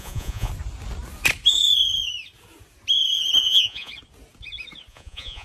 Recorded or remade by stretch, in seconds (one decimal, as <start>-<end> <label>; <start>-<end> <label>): 0.0-0.5 remade; 0.5-3.4 recorded; 3.4-3.9 remade; 3.9-4.9 recorded; 4.9-5.4 remade